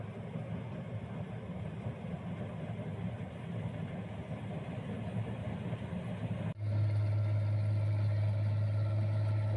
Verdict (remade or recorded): recorded